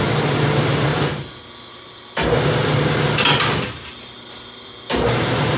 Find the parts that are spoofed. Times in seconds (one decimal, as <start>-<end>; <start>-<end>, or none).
none